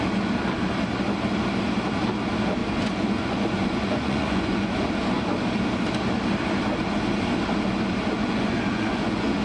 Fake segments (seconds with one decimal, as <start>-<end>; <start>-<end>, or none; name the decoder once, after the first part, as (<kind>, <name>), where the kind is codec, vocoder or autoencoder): 2.6-4.7 (vocoder, Vocos); 8.2-9.4